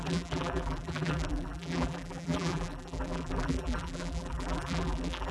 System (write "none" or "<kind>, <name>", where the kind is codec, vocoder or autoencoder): vocoder, BigVGAN v2